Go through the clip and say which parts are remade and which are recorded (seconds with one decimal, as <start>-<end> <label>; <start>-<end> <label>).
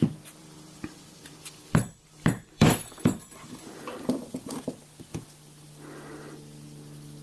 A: 0.0-0.4 recorded; 0.4-4.6 remade; 4.6-7.2 recorded